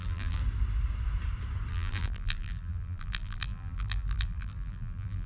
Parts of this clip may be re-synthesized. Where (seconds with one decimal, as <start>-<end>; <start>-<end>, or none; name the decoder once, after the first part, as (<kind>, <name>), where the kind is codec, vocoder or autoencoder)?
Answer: 0.0-0.4 (vocoder, BigVGAN v2); 1.7-5.3